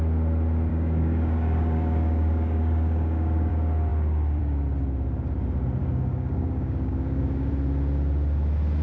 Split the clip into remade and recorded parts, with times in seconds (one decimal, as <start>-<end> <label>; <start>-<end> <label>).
0.0-0.7 recorded; 0.7-3.5 remade; 3.5-5.8 recorded; 5.8-7.5 remade; 7.5-8.8 recorded